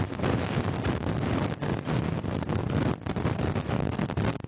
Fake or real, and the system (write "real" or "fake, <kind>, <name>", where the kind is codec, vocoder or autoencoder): real